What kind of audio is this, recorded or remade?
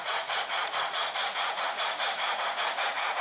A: remade